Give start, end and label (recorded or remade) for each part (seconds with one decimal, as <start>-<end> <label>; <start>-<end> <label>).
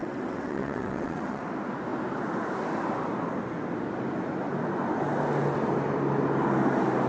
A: 0.0-1.4 remade; 1.4-7.1 recorded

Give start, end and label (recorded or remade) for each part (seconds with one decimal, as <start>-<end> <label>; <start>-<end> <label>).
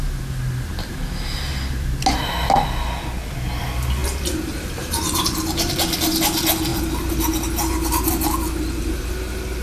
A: 0.0-9.6 recorded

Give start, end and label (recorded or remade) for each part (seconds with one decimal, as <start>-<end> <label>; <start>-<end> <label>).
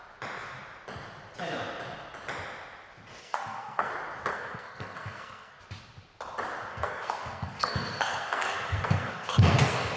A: 0.0-3.2 recorded; 3.2-3.9 remade; 3.9-4.3 recorded; 4.3-5.6 remade; 5.6-6.7 recorded; 6.7-10.0 remade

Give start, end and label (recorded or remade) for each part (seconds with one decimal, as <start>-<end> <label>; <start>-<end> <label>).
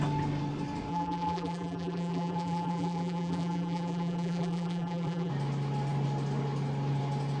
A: 0.0-0.9 recorded; 0.9-5.3 remade; 5.3-7.4 recorded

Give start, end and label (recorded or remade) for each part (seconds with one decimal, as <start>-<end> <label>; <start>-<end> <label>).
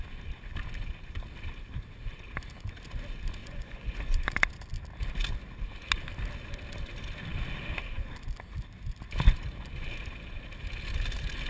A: 0.0-3.4 recorded; 3.4-4.4 remade; 4.4-11.5 recorded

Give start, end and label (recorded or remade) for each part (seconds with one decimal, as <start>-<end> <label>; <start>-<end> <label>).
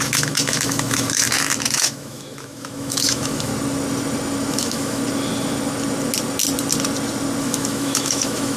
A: 0.0-3.5 remade; 3.5-4.5 recorded; 4.5-5.0 remade; 5.0-7.4 recorded; 7.4-8.6 remade